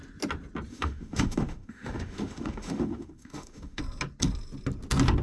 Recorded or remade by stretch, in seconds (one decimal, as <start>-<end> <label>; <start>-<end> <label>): 0.0-0.7 recorded; 0.7-3.8 remade; 3.8-5.2 recorded